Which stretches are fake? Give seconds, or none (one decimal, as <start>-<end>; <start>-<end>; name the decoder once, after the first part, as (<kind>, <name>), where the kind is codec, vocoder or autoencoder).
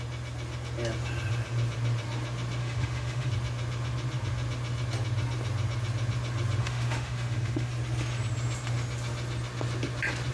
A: 2.6-3.3 (autoencoder, DAC-VAE); 6.6-7.7